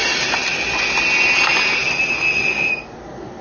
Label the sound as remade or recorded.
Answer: remade